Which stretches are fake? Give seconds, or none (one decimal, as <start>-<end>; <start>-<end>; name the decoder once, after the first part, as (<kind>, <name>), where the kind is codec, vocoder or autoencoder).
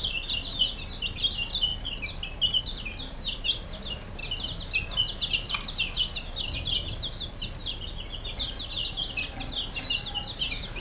none